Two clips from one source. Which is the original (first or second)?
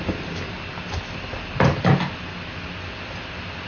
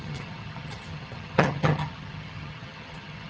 first